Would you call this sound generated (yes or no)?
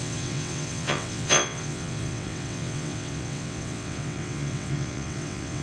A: yes